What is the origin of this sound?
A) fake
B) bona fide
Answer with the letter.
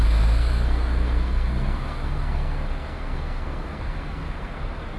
A